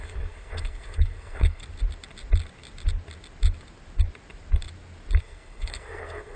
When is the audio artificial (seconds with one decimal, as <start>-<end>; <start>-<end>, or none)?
0.0-1.6; 5.2-6.4